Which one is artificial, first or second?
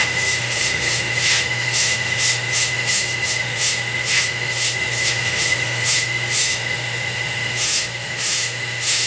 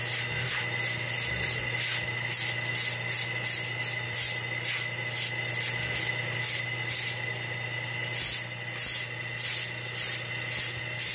first